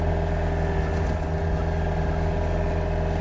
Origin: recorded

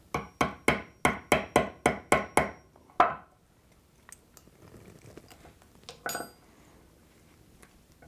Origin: recorded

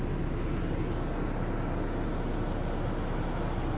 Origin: recorded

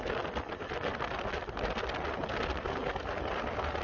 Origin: recorded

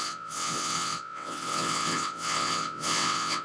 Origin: remade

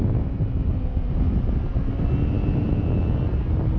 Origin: recorded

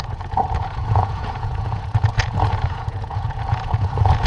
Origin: remade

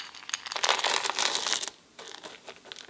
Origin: recorded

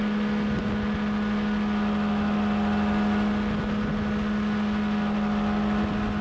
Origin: recorded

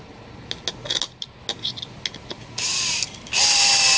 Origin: recorded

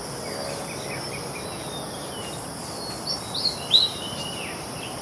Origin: recorded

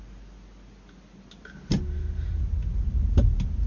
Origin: recorded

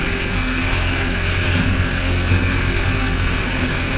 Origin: remade